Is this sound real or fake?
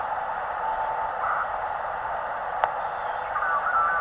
real